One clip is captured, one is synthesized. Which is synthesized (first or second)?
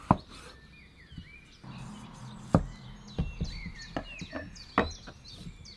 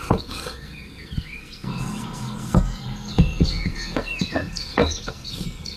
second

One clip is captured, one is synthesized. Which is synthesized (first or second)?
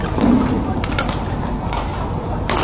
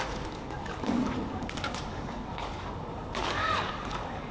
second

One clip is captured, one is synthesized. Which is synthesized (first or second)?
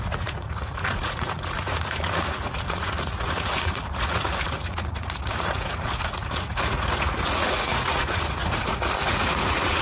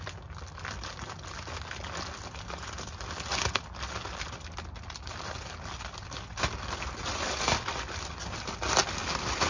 first